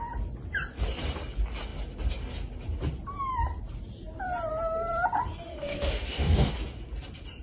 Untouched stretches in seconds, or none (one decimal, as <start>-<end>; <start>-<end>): 0.0-5.5; 6.5-7.4

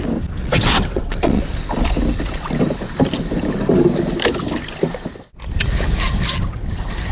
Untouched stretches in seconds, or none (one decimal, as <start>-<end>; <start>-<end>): 0.0-0.4; 1.4-7.1

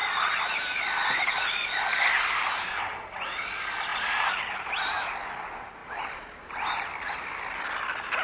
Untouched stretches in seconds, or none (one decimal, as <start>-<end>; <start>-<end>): 0.0-8.2

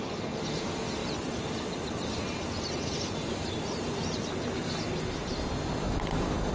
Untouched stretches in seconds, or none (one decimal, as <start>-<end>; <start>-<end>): 0.0-6.5

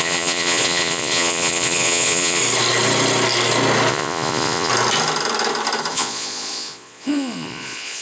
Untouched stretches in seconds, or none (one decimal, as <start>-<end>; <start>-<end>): 2.4-3.9; 4.7-5.9

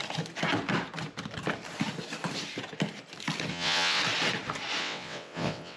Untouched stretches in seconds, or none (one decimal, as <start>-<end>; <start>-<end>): 0.0-3.5; 4.0-4.8

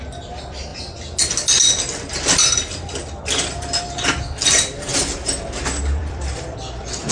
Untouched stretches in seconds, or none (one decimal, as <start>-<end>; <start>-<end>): 0.0-4.9; 5.4-6.0